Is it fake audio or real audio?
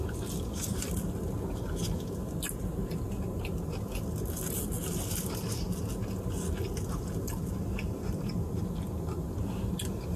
real